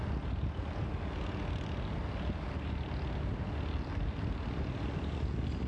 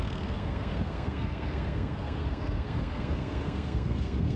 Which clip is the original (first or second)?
first